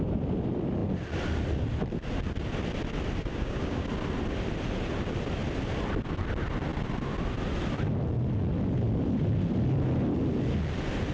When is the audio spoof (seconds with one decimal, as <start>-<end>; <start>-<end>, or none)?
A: 3.3-3.9